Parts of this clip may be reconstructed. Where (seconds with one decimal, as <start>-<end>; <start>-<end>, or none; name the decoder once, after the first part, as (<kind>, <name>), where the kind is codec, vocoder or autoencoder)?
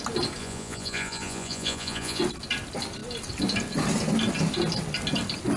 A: 0.4-2.2 (vocoder, Vocos)